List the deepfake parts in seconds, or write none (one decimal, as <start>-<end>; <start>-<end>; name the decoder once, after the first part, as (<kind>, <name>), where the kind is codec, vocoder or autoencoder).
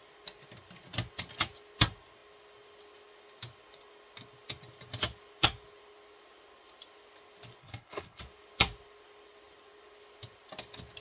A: 7.6-8.2 (codec, HILCodec)